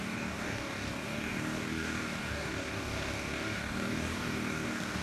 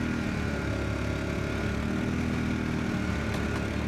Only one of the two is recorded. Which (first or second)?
second